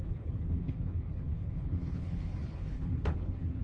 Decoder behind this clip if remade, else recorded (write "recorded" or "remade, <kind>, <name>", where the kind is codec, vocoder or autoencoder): remade, codec, HILCodec